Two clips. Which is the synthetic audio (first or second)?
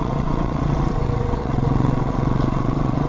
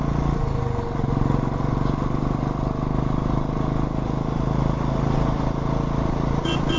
first